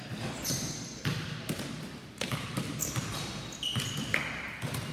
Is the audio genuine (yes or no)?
yes